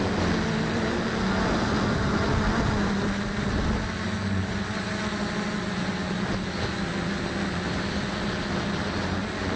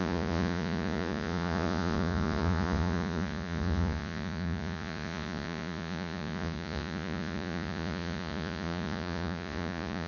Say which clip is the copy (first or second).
second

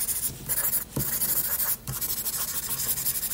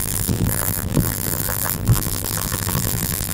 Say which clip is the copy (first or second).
second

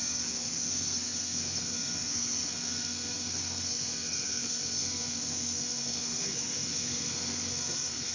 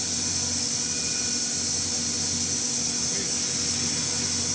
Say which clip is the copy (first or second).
first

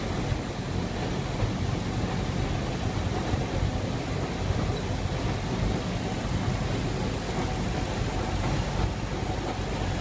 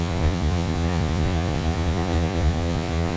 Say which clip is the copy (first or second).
second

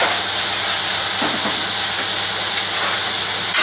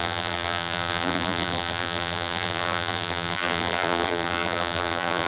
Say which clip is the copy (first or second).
second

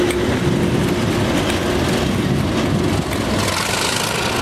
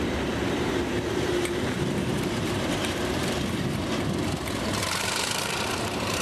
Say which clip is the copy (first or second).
second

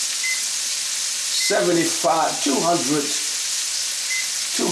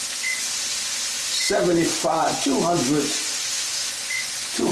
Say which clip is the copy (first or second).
second